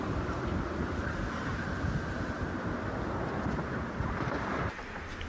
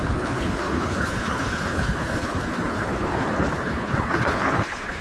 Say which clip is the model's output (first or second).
second